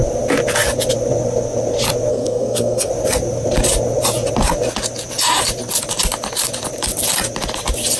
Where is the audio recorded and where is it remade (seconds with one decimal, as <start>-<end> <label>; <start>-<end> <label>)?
0.0-2.1 recorded; 2.1-2.9 remade; 2.9-8.0 recorded